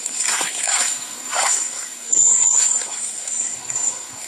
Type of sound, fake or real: fake